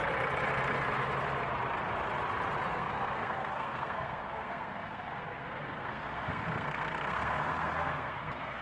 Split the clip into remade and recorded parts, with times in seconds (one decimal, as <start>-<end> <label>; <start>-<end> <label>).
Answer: 0.0-2.7 recorded; 2.7-8.6 remade